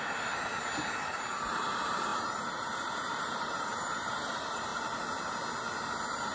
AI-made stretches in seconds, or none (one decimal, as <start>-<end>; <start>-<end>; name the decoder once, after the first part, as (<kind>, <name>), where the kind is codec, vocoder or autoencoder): 0.0-0.5 (vocoder, BigVGAN v2); 1.5-4.7